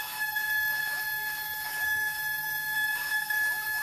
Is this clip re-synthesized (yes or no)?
yes